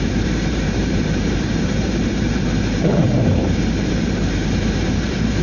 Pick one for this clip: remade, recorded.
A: remade